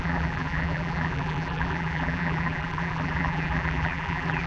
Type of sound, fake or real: fake